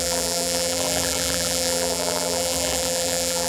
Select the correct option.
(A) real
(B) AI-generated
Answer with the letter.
B